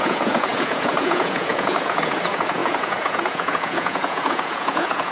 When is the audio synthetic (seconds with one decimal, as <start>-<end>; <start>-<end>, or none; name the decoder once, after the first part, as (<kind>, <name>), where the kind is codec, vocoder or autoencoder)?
0.0-5.1 (vocoder, Vocos)